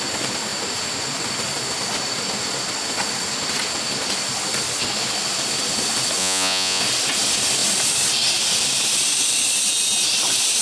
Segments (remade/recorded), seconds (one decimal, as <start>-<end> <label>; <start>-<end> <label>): 0.0-6.2 recorded; 6.2-6.8 remade; 6.8-10.6 recorded

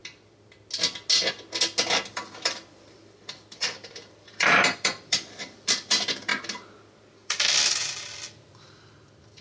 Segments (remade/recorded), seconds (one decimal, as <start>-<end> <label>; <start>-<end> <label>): 0.0-2.1 recorded; 2.1-6.3 remade; 6.3-6.9 recorded; 6.9-9.4 remade

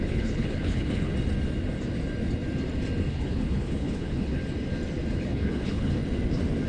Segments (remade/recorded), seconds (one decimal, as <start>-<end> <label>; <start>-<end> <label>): 0.0-1.1 remade; 1.1-3.1 recorded; 3.1-4.4 remade; 4.4-5.1 recorded; 5.1-6.0 remade; 6.0-6.7 recorded

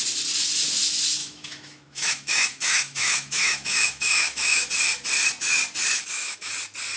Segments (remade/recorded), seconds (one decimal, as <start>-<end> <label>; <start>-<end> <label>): 0.0-1.2 recorded; 1.2-4.7 remade; 4.7-6.0 recorded; 6.0-6.5 remade; 6.5-7.0 recorded

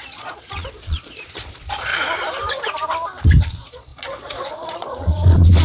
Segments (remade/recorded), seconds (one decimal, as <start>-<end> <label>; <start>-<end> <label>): 0.0-1.9 remade; 1.9-3.4 recorded; 3.4-5.6 remade

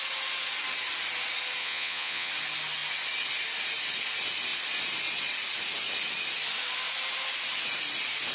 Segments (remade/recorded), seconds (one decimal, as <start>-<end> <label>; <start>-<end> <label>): 0.0-1.6 recorded; 1.6-2.3 remade; 2.3-8.3 recorded

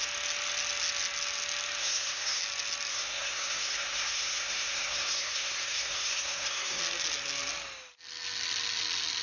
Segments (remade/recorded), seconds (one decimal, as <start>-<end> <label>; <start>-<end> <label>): 0.0-1.8 recorded; 1.8-2.4 remade; 2.4-2.9 recorded; 2.9-6.8 remade; 6.8-9.2 recorded